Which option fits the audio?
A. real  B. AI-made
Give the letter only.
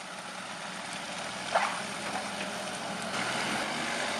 A